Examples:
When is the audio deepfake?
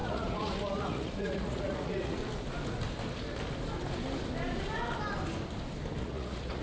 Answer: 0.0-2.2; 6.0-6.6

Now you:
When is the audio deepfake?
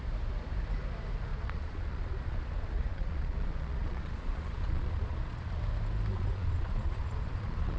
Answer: 1.3-5.6; 6.1-7.8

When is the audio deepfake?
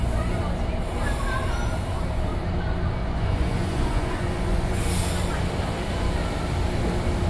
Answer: 3.0-4.8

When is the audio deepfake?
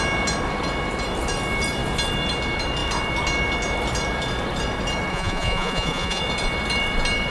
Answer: 5.1-6.2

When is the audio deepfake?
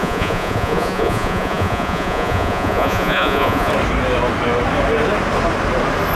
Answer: 0.0-3.7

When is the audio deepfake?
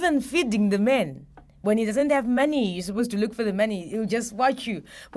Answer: 2.0-3.0